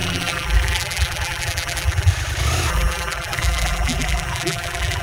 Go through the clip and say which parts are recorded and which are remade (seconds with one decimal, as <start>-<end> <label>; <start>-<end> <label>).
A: 0.0-2.1 remade; 2.1-2.7 recorded; 2.7-5.0 remade